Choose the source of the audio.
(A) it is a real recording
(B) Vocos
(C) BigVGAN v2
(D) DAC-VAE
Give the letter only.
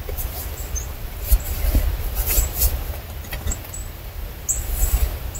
C